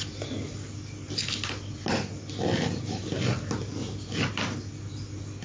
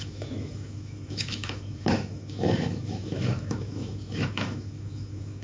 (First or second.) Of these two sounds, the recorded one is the first